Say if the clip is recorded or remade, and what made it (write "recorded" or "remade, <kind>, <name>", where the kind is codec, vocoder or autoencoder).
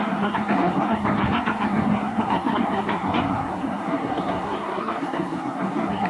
remade, codec, SNAC